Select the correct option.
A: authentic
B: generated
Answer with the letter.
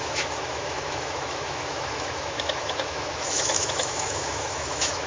B